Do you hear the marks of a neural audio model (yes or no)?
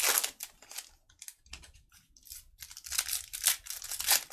no